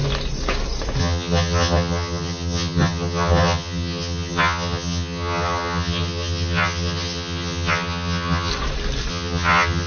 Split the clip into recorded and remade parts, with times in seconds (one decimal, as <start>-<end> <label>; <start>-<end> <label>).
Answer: 0.0-1.0 recorded; 1.0-8.5 remade; 8.5-9.1 recorded; 9.1-9.9 remade